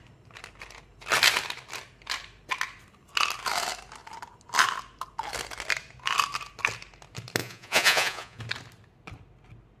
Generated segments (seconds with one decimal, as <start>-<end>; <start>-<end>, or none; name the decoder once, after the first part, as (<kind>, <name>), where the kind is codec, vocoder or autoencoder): 7.4-8.4 (vocoder, Vocos)